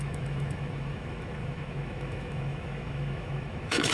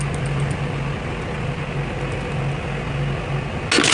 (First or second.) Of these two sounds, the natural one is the second